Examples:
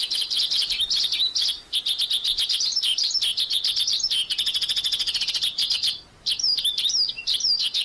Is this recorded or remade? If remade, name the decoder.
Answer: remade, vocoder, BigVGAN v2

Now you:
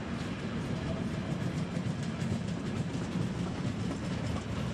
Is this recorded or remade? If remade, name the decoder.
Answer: recorded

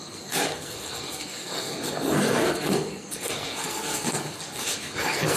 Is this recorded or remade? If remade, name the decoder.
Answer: remade, codec, SNAC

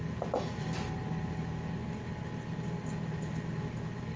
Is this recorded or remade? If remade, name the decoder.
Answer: recorded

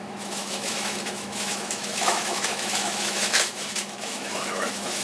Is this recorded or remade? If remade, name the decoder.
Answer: remade, autoencoder, DAC-VAE